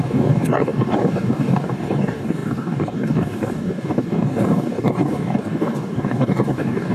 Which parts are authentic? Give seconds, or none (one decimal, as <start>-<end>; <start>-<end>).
none